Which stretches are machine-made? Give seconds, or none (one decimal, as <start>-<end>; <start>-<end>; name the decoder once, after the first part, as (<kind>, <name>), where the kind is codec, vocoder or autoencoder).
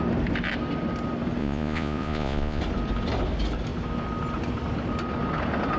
1.4-2.6 (vocoder, Vocos)